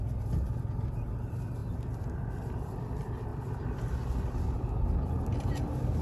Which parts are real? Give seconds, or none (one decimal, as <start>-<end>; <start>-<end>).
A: 0.0-6.0